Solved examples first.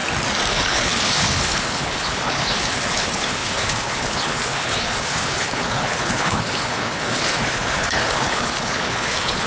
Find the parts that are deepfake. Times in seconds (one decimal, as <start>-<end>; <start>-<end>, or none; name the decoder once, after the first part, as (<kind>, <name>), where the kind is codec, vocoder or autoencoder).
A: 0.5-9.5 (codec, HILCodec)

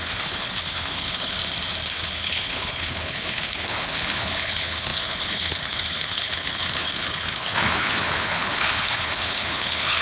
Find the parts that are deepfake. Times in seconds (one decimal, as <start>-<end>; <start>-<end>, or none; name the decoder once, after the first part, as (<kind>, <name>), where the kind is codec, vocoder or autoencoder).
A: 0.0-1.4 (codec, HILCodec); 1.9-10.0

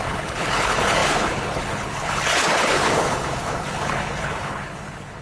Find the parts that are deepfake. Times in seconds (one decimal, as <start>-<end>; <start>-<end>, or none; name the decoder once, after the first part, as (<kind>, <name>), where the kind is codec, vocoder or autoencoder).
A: 0.0-5.2 (codec, HILCodec)